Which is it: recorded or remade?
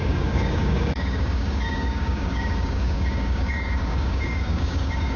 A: remade